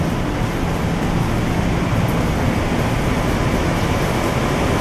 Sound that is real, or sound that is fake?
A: real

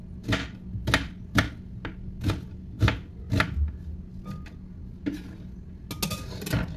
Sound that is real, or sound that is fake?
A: real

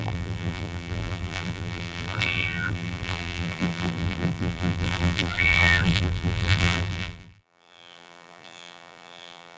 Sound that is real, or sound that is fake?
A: fake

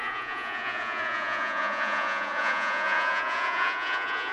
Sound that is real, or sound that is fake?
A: fake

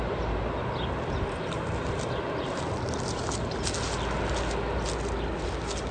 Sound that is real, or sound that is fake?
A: real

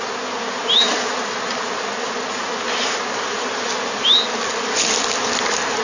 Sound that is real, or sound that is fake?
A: real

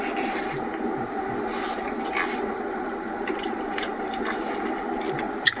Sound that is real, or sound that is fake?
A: real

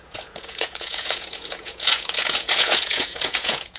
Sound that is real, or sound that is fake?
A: fake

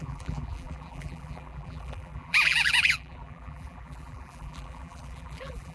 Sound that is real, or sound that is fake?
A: fake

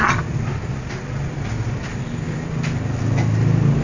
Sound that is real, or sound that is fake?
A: real